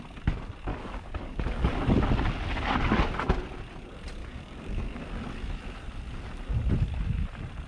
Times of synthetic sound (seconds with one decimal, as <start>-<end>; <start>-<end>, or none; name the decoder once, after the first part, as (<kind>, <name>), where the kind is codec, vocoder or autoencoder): 0.7-1.8 (codec, DAC); 4.2-5.0